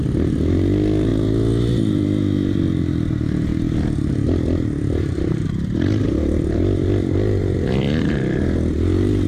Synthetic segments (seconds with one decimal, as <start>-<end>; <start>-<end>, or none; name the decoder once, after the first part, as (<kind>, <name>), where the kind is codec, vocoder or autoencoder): 0.0-1.1 (vocoder, BigVGAN v2); 1.7-3.5; 4.0-9.3